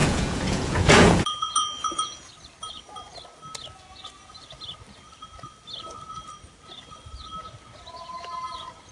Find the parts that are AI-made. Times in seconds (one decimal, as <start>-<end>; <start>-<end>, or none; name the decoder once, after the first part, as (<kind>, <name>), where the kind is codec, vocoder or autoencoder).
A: 0.0-2.3 (vocoder, Vocos)